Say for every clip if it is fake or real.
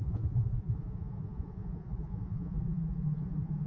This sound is fake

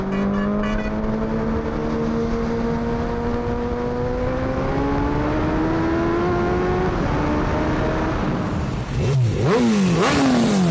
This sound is real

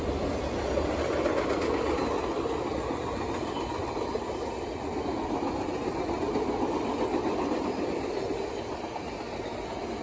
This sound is real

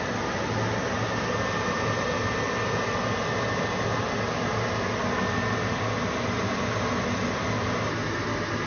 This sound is real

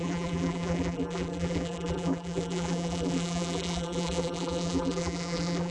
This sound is fake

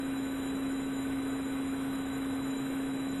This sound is fake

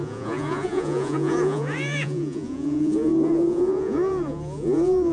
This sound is fake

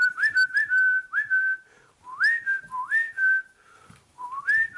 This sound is real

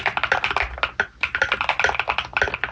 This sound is real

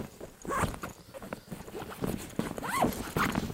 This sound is real